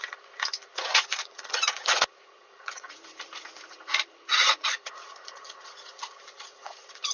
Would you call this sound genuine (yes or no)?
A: no